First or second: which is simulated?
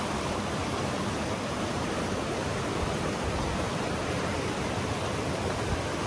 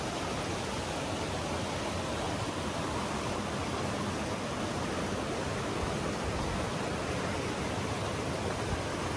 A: first